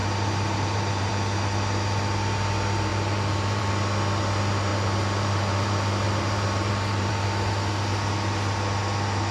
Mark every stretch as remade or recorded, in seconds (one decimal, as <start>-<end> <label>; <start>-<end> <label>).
0.0-1.1 remade; 1.1-2.9 recorded; 2.9-3.6 remade; 3.6-4.7 recorded; 4.7-7.1 remade; 7.1-9.3 recorded